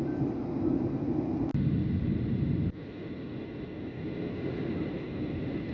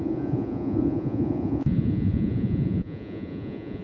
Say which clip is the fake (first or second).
second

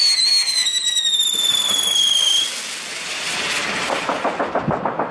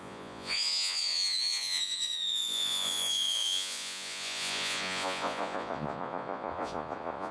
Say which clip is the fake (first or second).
second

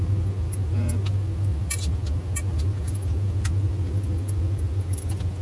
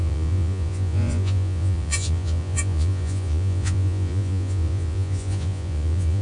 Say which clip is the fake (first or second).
second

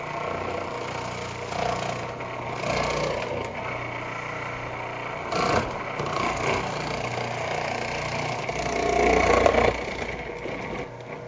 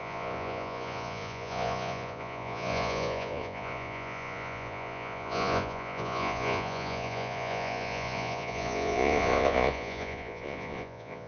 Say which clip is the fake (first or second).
second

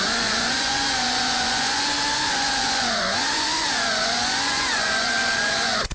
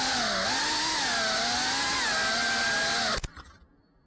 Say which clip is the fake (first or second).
first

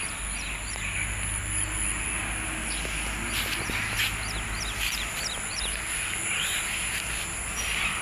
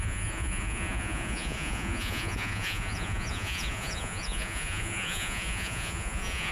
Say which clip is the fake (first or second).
second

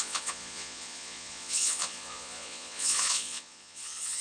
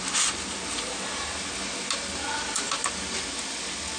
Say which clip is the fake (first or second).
first